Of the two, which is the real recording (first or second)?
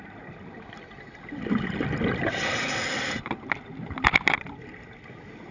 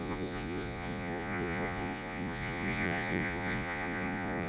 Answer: first